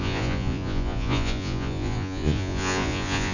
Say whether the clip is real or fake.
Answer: fake